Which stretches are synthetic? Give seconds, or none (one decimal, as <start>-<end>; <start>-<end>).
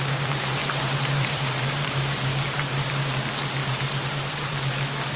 0.6-1.9; 3.6-4.8